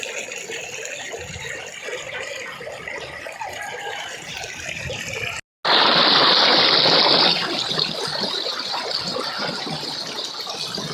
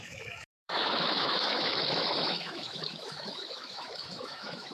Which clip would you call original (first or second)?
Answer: first